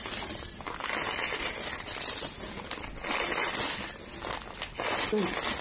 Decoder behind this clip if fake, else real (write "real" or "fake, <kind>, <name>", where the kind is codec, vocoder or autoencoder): real